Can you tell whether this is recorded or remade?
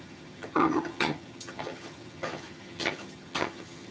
remade